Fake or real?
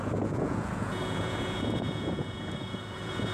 fake